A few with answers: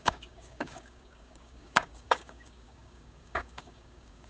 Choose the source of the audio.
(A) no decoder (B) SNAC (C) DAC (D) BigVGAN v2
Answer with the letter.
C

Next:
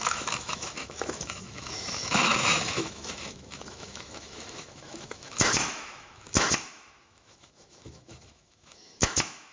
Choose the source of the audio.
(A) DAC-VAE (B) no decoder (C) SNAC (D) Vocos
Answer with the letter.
A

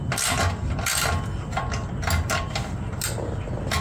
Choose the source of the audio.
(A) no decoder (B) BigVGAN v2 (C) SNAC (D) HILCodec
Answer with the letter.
A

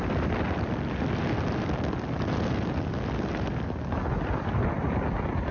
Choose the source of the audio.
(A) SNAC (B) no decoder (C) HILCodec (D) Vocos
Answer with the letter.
B